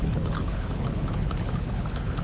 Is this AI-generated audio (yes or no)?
yes